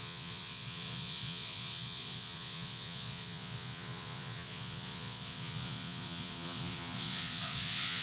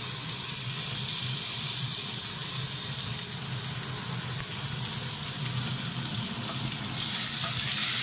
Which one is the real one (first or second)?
second